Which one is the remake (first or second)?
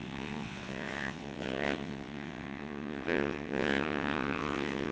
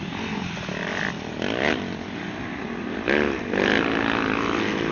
first